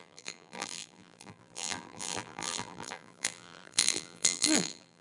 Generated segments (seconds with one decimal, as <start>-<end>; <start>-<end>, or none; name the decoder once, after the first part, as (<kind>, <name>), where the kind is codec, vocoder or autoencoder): 0.0-5.0 (vocoder, BigVGAN v2)